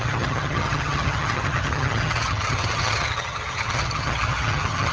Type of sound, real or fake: fake